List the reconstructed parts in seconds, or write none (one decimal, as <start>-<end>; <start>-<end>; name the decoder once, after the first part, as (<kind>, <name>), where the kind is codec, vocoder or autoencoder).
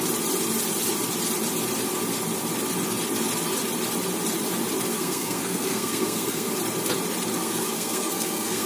4.9-6.5 (codec, SNAC); 7.4-8.7